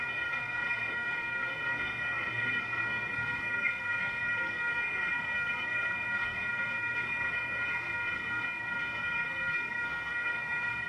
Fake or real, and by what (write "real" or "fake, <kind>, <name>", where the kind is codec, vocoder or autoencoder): fake, codec, SNAC